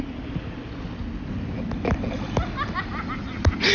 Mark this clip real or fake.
real